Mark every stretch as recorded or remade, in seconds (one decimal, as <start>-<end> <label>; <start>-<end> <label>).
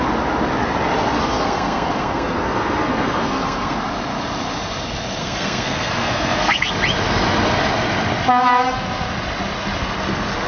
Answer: 0.0-1.2 recorded; 1.2-3.8 remade; 3.8-5.2 recorded; 5.2-6.7 remade; 6.7-10.5 recorded